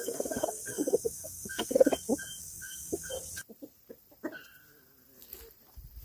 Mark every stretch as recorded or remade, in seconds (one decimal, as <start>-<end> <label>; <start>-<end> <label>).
0.0-1.9 remade; 1.9-2.4 recorded; 2.4-3.1 remade; 3.1-6.0 recorded

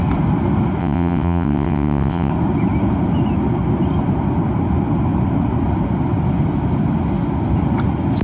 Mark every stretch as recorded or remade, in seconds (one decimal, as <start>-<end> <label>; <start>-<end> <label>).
0.0-0.8 recorded; 0.8-2.3 remade; 2.3-8.2 recorded

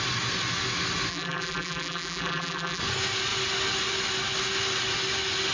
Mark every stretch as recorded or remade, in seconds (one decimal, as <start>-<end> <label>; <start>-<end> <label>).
0.0-1.1 recorded; 1.1-2.8 remade; 2.8-5.5 recorded

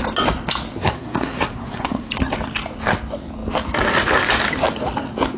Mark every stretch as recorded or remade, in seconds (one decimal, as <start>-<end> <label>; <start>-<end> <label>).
0.0-0.8 recorded; 0.8-2.1 remade; 2.1-5.4 recorded

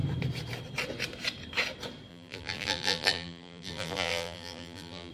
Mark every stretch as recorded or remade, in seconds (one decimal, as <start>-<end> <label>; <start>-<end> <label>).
0.0-2.1 recorded; 2.1-5.1 remade

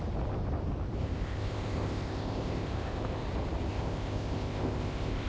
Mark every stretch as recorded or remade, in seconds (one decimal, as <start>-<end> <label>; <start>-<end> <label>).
0.0-1.0 recorded; 1.0-3.2 remade; 3.2-3.7 recorded; 3.7-5.3 remade